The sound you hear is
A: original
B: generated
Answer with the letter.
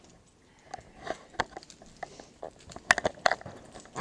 A